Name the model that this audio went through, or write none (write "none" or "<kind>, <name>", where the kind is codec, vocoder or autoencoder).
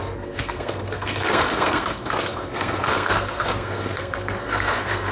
codec, SNAC